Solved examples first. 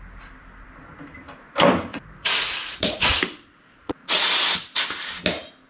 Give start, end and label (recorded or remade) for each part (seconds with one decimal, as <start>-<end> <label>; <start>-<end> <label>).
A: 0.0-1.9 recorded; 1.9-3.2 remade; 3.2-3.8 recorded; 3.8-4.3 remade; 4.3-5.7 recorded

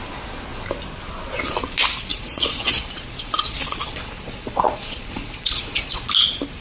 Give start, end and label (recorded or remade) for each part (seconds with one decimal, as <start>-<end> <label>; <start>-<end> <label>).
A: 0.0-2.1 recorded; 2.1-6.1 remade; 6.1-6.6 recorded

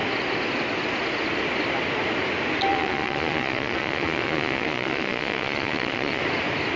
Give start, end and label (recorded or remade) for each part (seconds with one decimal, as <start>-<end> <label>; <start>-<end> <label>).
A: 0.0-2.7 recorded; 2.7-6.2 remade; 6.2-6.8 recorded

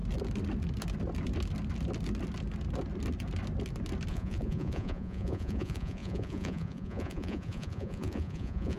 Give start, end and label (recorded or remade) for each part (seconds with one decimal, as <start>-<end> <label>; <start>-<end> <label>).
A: 0.0-4.1 recorded; 4.1-8.8 remade

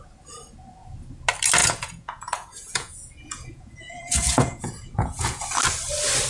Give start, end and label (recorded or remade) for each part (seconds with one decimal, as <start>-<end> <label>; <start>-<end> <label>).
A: 0.0-1.6 recorded; 1.6-5.4 remade; 5.4-6.3 recorded